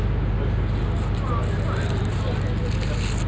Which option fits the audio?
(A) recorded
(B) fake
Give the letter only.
A